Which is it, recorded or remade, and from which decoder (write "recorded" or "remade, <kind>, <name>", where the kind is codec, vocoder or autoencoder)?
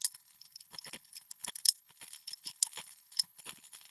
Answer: remade, codec, HILCodec